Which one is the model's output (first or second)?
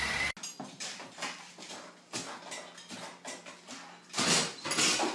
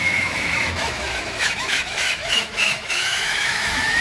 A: second